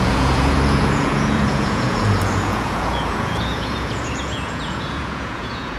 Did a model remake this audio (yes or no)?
yes